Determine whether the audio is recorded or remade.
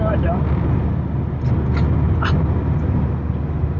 recorded